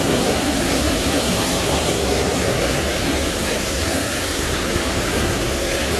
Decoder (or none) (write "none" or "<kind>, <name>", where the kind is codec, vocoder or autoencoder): codec, SNAC